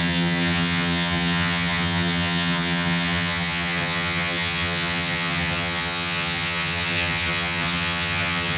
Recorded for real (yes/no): no